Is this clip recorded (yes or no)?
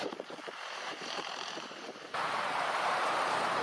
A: no